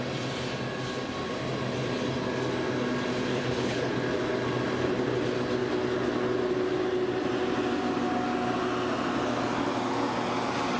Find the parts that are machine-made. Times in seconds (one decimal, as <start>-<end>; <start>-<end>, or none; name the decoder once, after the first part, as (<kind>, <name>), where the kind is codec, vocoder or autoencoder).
3.3-3.9 (codec, HILCodec)